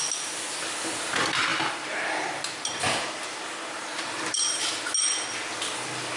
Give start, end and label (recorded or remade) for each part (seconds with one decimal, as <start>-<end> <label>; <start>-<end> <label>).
0.0-1.5 recorded; 1.5-4.7 remade; 4.7-6.2 recorded